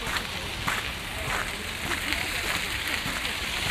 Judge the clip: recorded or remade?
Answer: recorded